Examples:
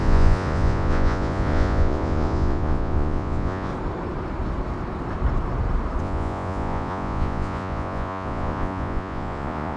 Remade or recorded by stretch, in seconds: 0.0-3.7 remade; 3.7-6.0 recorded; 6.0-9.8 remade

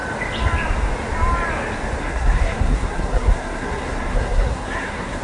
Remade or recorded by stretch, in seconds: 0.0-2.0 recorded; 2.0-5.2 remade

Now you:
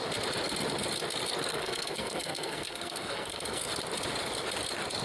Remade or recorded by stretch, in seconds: 0.0-1.5 recorded; 1.5-3.7 remade; 3.7-5.0 recorded

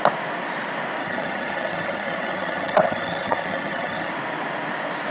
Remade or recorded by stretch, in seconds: 0.0-1.0 recorded; 1.0-4.1 remade; 4.1-5.1 recorded

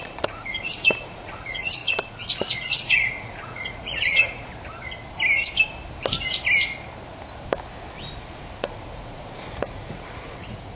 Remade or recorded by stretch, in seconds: 0.0-4.5 remade; 4.5-8.2 recorded; 8.2-10.8 remade

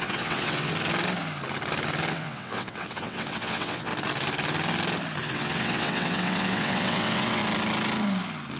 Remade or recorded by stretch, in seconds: 0.0-0.7 remade; 0.7-2.1 recorded; 2.1-3.9 remade; 3.9-5.2 recorded; 5.2-7.4 remade; 7.4-8.6 recorded

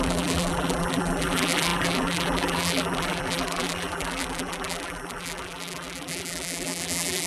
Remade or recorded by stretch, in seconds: 0.0-7.3 remade

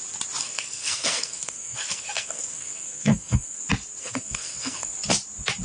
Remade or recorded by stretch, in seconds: 0.0-0.4 recorded; 0.4-3.6 remade; 3.6-4.0 recorded; 4.0-4.9 remade; 4.9-5.6 recorded